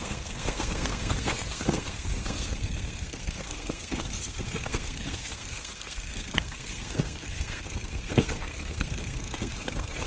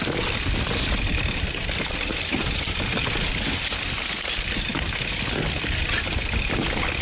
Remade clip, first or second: first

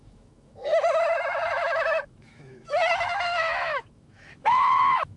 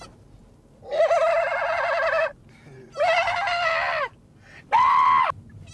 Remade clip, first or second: first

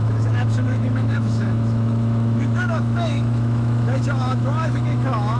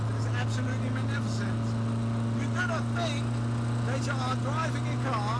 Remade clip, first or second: first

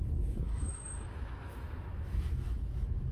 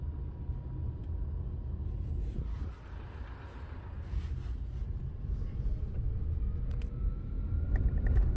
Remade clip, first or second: first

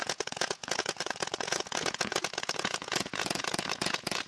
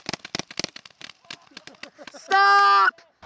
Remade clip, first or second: first